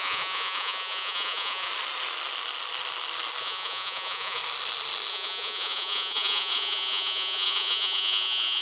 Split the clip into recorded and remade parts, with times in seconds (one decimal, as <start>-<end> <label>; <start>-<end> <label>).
0.0-1.7 remade; 1.7-3.4 recorded; 3.4-4.4 remade; 4.4-5.1 recorded; 5.1-8.6 remade